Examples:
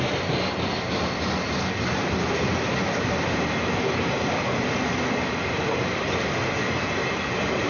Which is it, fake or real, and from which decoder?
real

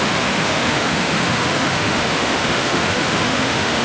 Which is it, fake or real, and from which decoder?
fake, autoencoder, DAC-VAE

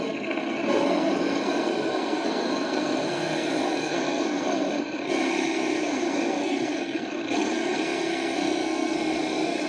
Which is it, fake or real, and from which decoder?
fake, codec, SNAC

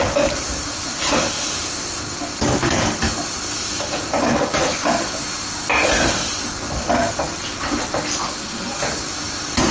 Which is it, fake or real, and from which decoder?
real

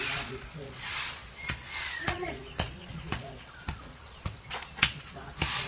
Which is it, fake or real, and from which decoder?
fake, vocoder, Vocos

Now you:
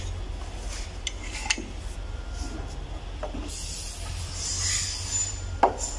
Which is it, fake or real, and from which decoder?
real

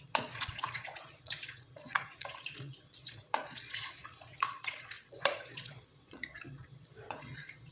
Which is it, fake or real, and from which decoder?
fake, vocoder, Vocos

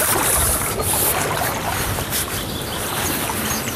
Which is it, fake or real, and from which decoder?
real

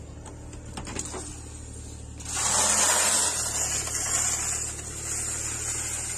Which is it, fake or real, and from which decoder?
real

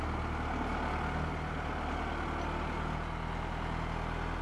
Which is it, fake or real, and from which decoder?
real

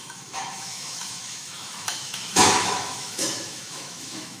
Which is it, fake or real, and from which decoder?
fake, autoencoder, DAC-VAE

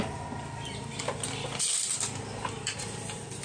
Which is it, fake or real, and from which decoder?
real